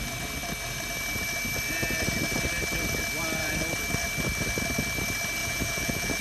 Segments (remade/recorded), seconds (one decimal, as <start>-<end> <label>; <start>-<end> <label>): 0.0-5.4 recorded; 5.4-6.2 remade